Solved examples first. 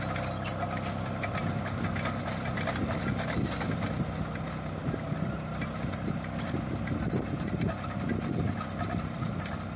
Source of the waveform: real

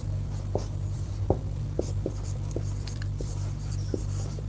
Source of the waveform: fake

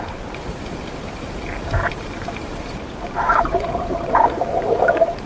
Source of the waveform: fake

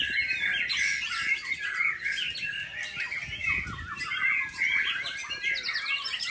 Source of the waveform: real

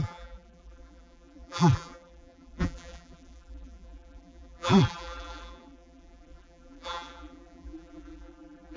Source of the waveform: fake